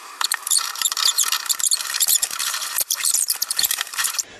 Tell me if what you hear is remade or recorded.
remade